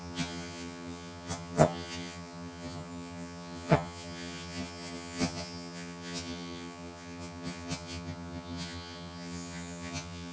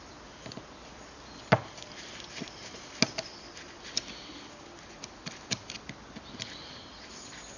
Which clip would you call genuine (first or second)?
second